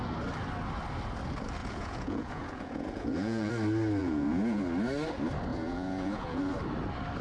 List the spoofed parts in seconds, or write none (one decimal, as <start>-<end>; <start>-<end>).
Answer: 1.6-3.5; 4.0-4.6; 5.5-6.4